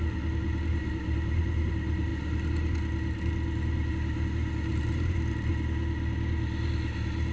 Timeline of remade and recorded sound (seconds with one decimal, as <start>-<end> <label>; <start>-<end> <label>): 0.0-0.7 recorded; 0.7-1.7 remade; 1.7-4.7 recorded; 4.7-5.5 remade; 5.5-7.3 recorded